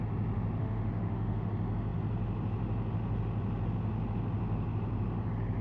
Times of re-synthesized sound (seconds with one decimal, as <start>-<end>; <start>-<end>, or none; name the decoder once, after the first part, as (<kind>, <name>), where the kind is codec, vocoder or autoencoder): 0.6-1.5 (autoencoder, DAC-VAE)